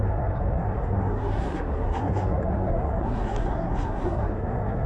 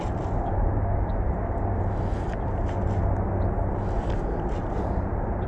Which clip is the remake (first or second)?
first